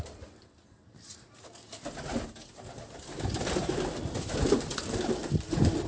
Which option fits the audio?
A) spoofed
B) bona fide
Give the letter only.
B